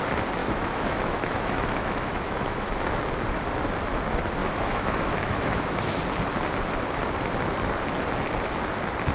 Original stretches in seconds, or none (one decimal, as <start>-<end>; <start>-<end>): 0.0-0.4; 2.7-4.4; 6.0-9.1